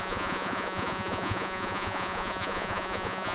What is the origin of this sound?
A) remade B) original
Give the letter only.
A